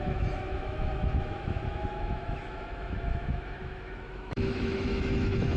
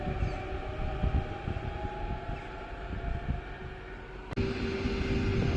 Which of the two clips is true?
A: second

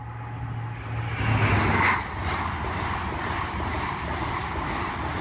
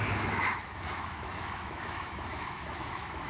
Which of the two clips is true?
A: first